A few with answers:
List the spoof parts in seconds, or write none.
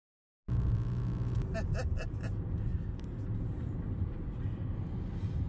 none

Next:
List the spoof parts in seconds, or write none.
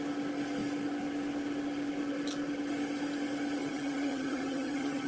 3.6-5.1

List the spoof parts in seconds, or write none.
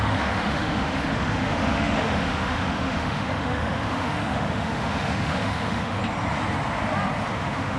0.0-6.0; 7.3-7.8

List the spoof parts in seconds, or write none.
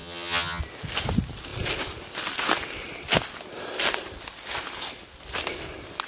0.0-0.6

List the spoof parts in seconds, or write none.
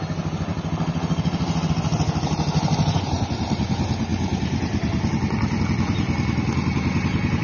none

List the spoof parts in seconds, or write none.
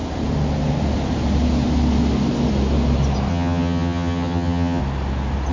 3.3-4.8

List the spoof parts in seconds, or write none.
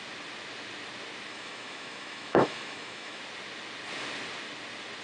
1.3-3.2